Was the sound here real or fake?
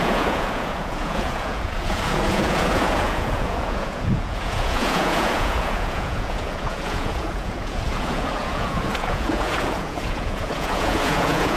fake